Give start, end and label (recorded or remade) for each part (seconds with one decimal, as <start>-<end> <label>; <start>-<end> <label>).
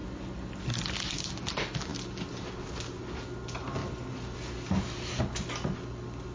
0.0-6.3 recorded